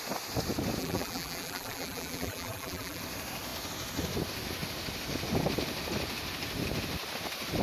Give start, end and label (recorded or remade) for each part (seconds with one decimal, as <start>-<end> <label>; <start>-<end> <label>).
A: 0.0-0.8 recorded; 0.8-3.0 remade; 3.0-7.6 recorded